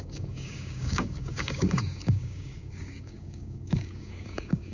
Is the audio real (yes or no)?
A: no